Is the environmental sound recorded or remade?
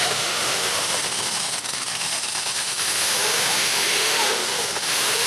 remade